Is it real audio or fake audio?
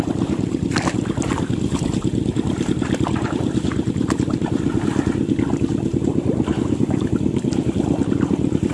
fake